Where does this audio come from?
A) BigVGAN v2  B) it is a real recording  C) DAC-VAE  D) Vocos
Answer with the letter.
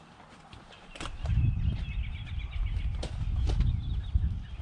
B